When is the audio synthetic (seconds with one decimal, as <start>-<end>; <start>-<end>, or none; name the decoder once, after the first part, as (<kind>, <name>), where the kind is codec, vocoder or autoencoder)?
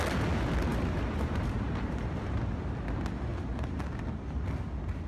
0.7-2.5 (vocoder, BigVGAN v2); 3.3-3.8